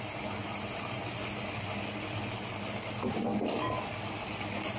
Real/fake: real